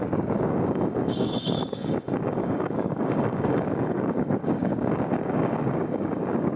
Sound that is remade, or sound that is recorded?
remade